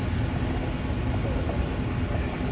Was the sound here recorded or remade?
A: recorded